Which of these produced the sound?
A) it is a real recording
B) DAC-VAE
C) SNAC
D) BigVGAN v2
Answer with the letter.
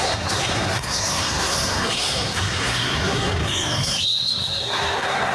C